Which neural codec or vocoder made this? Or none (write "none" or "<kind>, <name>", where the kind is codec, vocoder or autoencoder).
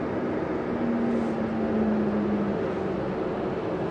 none